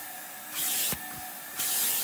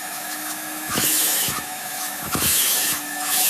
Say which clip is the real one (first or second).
first